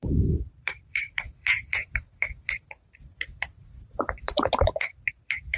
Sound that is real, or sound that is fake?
fake